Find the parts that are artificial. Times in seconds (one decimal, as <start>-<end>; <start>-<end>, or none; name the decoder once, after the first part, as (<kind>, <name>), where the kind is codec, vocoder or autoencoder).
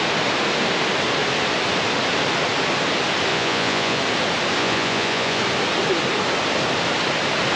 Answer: 3.3-4.0 (vocoder, Vocos); 4.6-5.4